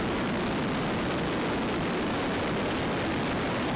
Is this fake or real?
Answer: real